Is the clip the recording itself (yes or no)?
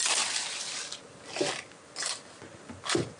yes